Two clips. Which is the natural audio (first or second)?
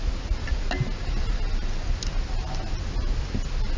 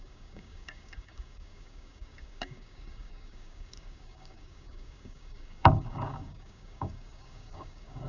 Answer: first